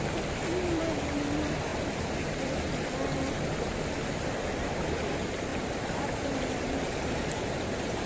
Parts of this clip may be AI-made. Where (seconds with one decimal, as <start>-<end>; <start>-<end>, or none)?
1.7-2.7; 5.5-7.3